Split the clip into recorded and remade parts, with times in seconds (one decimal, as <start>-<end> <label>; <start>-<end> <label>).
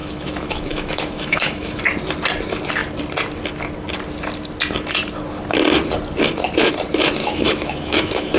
0.0-1.8 remade; 1.8-7.2 recorded; 7.2-8.4 remade